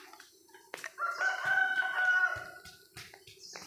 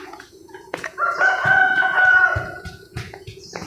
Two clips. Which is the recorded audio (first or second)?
first